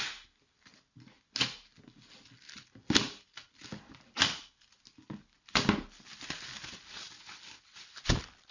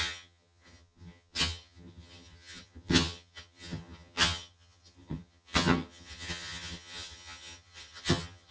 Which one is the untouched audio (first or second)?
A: first